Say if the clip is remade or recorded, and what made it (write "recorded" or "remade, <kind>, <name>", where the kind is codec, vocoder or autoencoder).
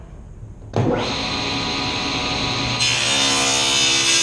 recorded